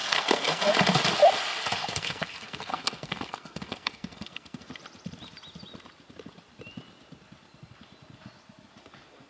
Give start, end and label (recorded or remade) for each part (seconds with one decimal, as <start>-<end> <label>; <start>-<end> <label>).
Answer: 0.0-0.7 remade; 0.7-1.8 recorded; 1.8-4.7 remade; 4.7-9.3 recorded